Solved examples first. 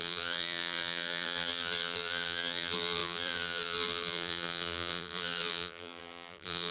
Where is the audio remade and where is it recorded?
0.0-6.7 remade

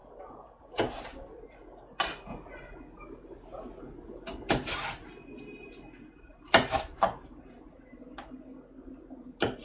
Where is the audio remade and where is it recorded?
0.0-1.8 remade; 1.8-9.6 recorded

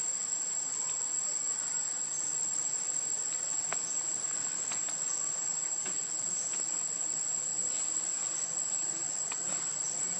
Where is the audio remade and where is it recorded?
0.0-10.2 recorded

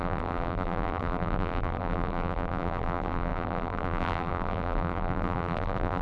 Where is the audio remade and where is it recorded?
0.0-6.0 remade

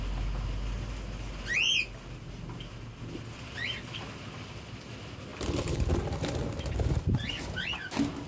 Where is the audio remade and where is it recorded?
0.0-8.3 recorded

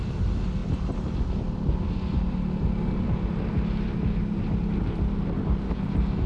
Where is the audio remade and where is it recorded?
0.0-0.6 recorded; 0.6-3.3 remade; 3.3-6.3 recorded

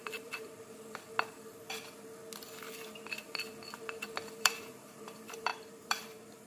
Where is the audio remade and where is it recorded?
0.0-0.5 remade; 0.5-4.4 recorded; 4.4-6.5 remade